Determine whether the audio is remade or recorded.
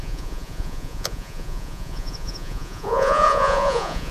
remade